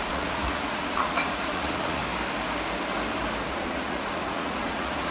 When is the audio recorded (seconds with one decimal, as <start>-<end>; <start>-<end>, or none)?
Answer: 2.0-3.5